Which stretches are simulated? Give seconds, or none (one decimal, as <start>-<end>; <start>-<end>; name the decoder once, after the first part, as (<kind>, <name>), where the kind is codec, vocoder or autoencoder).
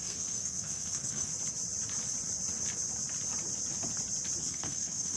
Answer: 0.0-1.3 (codec, SNAC); 4.4-5.2